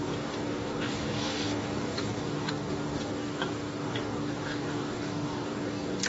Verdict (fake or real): fake